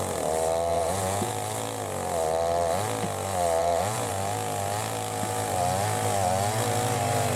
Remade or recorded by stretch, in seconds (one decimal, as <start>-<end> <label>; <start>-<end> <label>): 0.0-0.7 recorded; 0.7-1.3 remade; 1.3-3.6 recorded; 3.6-4.1 remade; 4.1-7.4 recorded